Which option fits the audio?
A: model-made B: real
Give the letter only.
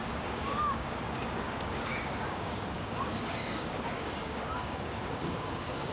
A